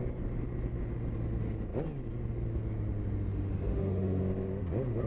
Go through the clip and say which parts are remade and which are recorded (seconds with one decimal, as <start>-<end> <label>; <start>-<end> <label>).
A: 0.0-3.7 recorded; 3.7-4.2 remade; 4.2-5.1 recorded